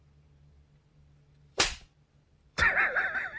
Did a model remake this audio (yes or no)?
yes